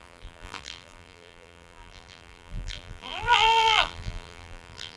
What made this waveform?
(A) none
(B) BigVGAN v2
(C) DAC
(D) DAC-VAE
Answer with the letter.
B